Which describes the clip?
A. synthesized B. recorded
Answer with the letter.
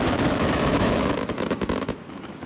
A